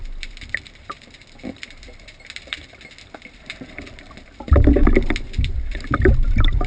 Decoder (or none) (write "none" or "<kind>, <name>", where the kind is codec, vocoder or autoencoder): vocoder, BigVGAN v2